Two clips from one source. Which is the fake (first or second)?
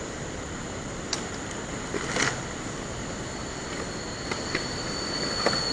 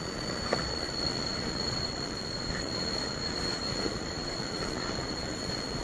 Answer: second